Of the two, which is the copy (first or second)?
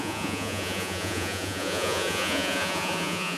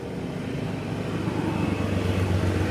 first